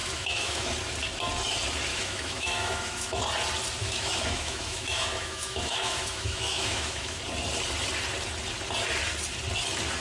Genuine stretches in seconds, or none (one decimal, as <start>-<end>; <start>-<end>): 0.7-1.9; 3.2-3.8; 7.2-10.0